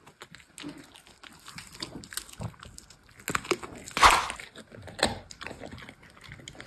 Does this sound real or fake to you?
real